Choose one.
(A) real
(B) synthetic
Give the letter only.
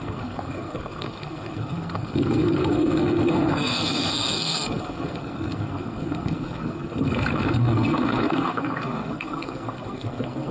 B